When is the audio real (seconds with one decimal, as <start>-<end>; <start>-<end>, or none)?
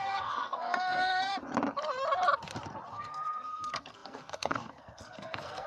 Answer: 1.3-2.9